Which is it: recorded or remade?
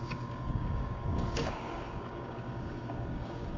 remade